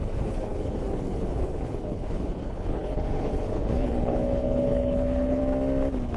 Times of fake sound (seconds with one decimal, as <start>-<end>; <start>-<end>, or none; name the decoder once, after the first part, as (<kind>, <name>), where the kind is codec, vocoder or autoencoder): 0.0-5.4 (codec, HILCodec)